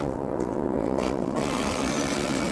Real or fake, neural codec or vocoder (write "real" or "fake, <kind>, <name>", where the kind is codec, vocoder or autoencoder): fake, vocoder, WaveNeXt